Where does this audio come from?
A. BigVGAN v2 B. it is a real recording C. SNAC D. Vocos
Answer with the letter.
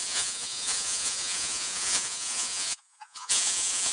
D